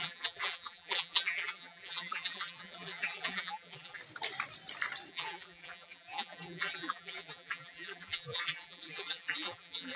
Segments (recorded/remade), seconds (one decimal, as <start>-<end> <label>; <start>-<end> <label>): 0.0-4.0 remade; 4.0-5.1 recorded; 5.1-10.0 remade